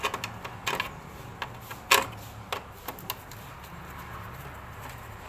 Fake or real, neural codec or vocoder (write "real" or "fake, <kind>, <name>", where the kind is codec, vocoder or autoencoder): real